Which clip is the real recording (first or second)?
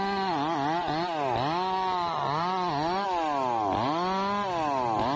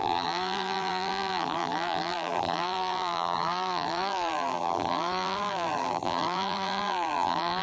first